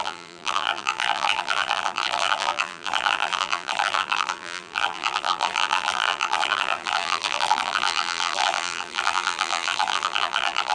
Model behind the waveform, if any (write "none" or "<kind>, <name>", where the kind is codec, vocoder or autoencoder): vocoder, BigVGAN v2